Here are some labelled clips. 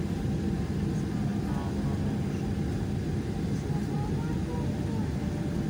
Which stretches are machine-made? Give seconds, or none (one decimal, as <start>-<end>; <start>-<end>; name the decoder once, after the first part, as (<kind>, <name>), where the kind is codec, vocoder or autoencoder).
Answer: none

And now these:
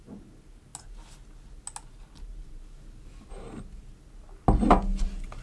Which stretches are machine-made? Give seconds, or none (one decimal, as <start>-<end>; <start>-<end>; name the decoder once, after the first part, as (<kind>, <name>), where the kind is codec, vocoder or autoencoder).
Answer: none

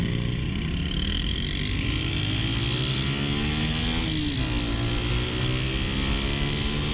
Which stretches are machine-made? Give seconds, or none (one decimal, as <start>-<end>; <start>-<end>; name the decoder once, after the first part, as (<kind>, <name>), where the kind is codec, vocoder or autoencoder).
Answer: none